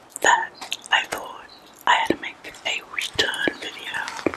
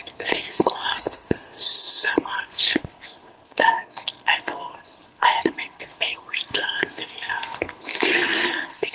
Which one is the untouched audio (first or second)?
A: first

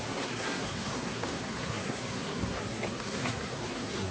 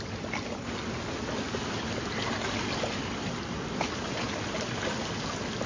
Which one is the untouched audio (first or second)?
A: second